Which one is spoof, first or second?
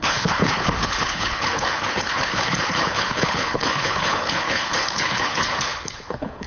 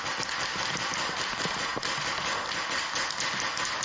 first